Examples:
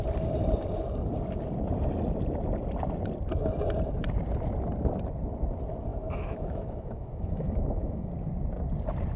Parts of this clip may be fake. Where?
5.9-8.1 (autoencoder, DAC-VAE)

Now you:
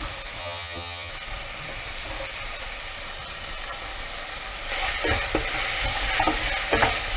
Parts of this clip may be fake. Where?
0.4-1.1 (vocoder, HiFi-GAN)

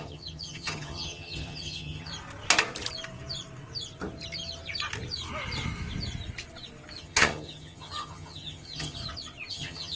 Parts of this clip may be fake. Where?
0.0-2.1 (vocoder, HiFi-GAN); 7.0-9.0; 9.5-10.0

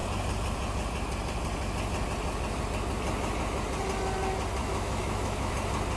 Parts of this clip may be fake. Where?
4.6-5.5 (autoencoder, DAC-VAE)

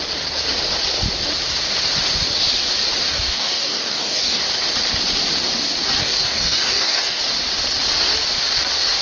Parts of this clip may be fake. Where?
3.1-4.4 (codec, DAC); 6.0-7.2

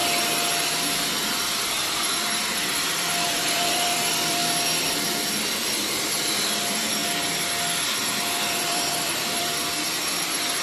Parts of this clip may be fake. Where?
1.2-4.4 (vocoder, BigVGAN v2); 5.3-7.0; 7.9-10.6

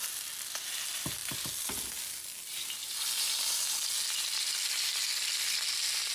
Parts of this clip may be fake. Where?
none